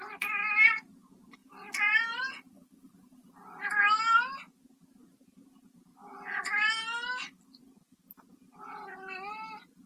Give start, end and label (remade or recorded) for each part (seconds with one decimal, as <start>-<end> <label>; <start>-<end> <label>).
0.0-1.4 recorded; 1.4-3.7 remade; 3.7-9.9 recorded